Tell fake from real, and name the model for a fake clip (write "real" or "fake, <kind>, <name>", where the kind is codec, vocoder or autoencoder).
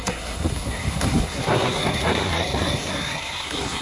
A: fake, codec, SNAC